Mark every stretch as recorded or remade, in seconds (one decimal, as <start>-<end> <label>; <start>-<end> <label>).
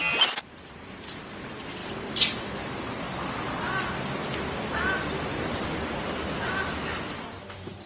0.0-1.8 recorded; 1.8-6.5 remade; 6.5-7.9 recorded